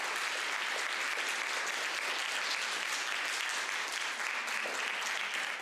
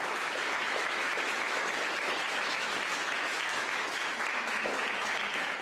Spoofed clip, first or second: second